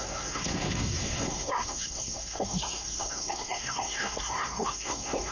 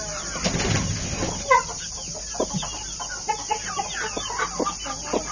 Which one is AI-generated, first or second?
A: first